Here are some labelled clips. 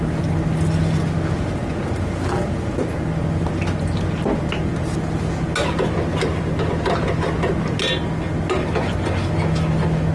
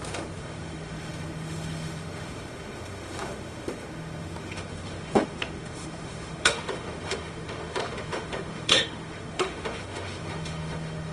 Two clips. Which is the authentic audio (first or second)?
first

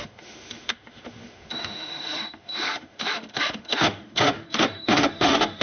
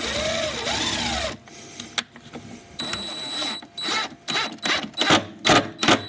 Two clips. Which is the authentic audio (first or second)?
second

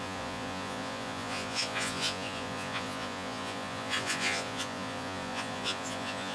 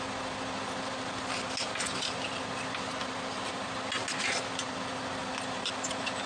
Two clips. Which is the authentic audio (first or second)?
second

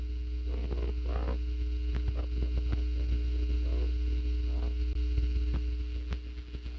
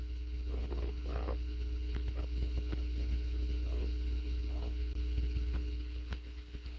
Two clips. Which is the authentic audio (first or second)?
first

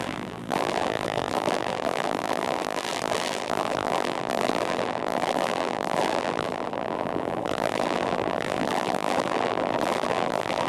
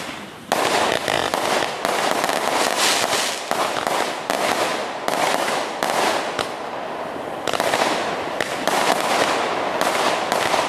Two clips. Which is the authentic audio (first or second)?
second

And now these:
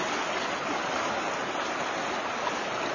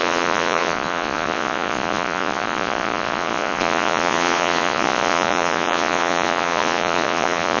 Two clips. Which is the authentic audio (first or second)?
first